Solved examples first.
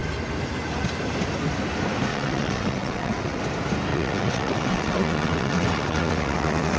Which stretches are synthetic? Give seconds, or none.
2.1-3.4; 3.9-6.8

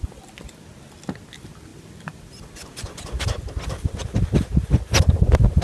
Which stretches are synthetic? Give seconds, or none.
none

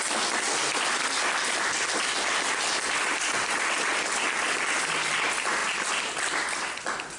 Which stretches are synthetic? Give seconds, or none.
none